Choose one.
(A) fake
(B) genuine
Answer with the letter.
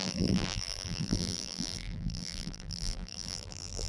A